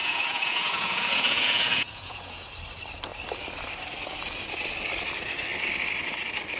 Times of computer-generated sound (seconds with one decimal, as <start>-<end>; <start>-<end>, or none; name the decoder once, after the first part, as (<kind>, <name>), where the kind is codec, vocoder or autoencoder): 0.0-2.5 (vocoder, Vocos)

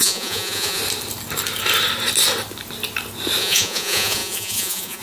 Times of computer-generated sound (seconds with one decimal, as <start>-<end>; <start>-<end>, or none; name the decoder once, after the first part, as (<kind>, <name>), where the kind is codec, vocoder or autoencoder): 0.0-0.8 (vocoder, Vocos); 3.4-5.0

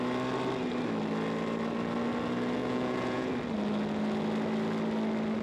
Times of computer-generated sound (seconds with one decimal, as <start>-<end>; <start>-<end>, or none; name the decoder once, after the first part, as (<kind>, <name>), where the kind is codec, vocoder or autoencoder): 2.6-3.3 (vocoder, Vocos)

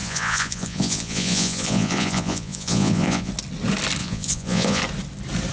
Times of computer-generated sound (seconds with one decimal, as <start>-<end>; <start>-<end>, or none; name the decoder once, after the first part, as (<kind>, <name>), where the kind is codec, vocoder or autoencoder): 0.0-3.3 (vocoder, Vocos); 4.0-4.8

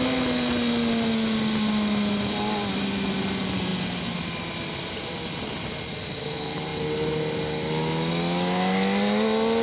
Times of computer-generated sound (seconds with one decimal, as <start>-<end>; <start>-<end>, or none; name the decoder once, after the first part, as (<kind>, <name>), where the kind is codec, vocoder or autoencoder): none

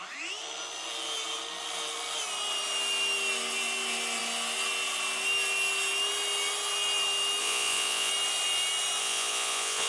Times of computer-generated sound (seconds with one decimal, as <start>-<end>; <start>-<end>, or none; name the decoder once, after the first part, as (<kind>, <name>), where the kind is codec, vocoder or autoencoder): 7.4-8.1 (vocoder, Vocos); 9.0-9.9